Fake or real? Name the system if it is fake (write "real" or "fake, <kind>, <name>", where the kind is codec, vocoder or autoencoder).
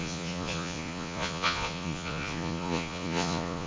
fake, vocoder, Vocos